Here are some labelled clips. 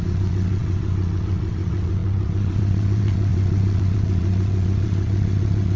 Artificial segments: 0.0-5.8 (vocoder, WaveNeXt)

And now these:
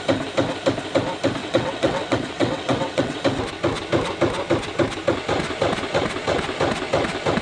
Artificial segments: 1.4-3.2 (vocoder, WaveNeXt)

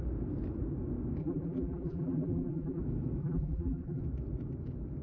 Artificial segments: 1.2-2.8 (vocoder, BigVGAN v2); 3.2-4.0

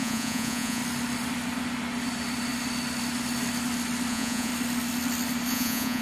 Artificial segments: 0.0-0.8 (vocoder, Vocos); 4.1-4.5; 5.5-6.0

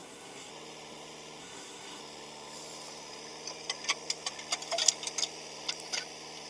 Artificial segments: 0.0-0.5 (codec, SNAC); 1.4-2.0

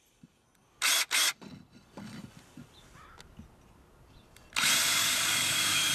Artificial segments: 5.0-5.9 (codec, DAC)

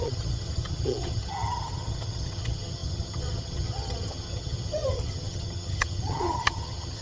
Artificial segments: 0.0-7.0 (vocoder, HiFi-GAN)